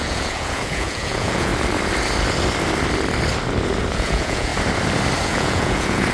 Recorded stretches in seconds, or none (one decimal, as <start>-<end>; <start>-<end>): 1.5-3.9; 4.5-5.2